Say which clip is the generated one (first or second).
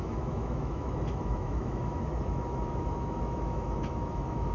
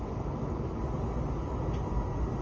first